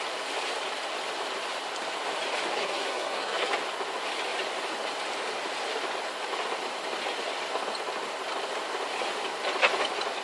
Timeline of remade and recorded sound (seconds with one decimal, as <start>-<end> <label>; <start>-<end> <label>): 0.0-2.6 recorded; 2.6-3.5 remade; 3.5-10.2 recorded